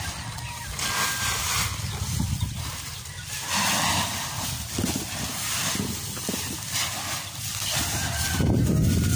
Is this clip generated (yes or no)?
no